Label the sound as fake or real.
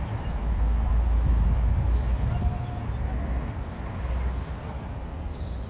real